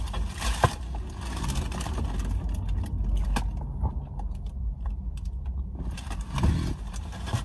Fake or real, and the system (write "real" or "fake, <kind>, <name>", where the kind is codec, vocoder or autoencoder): real